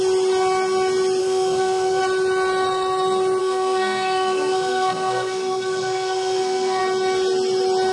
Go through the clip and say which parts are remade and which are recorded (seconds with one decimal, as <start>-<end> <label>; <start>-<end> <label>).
0.0-1.2 recorded; 1.2-2.0 remade; 2.0-3.4 recorded; 3.4-6.8 remade; 6.8-7.9 recorded